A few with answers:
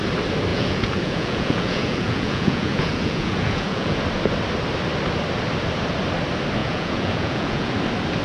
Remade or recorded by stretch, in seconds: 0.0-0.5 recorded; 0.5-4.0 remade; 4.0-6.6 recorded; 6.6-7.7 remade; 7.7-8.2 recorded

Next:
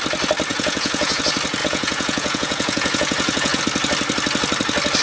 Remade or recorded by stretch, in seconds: 0.0-0.5 recorded; 0.5-1.2 remade; 1.2-1.6 recorded; 1.6-3.6 remade; 3.6-5.0 recorded

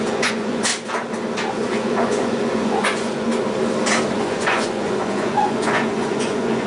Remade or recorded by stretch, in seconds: 0.0-0.7 remade; 0.7-1.5 recorded; 1.5-3.3 remade; 3.3-4.1 recorded; 4.1-6.7 remade

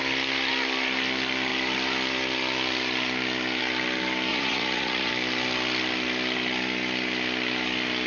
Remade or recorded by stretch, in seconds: 0.0-4.3 recorded; 4.3-5.1 remade; 5.1-8.1 recorded

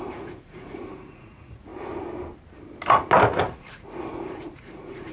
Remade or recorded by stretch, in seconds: 0.0-1.7 remade; 1.7-3.4 recorded; 3.4-5.1 remade

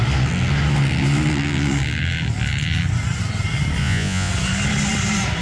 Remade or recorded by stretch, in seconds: 0.0-3.8 recorded; 3.8-4.3 remade; 4.3-5.4 recorded

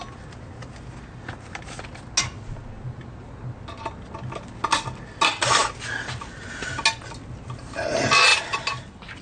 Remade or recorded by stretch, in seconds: 0.0-9.2 recorded